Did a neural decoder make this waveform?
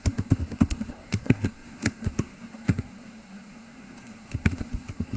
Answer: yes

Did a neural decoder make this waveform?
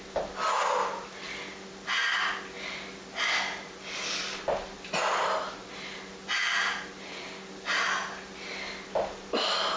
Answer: no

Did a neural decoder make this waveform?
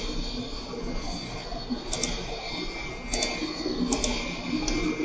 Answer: no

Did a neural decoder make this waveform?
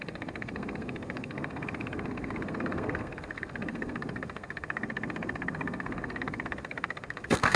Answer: yes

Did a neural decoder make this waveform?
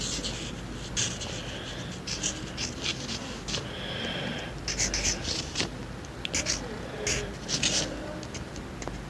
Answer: no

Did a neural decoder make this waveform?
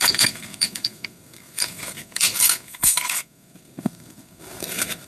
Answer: yes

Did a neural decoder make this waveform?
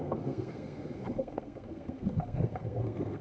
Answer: yes